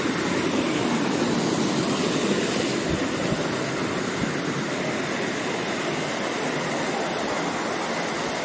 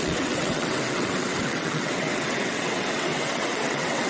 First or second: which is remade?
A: second